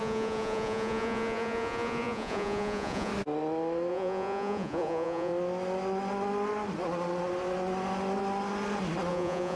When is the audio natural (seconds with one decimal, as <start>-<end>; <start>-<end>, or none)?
3.1-3.9; 5.3-9.1